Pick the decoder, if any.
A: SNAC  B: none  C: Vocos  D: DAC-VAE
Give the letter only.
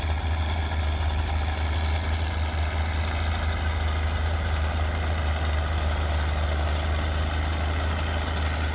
B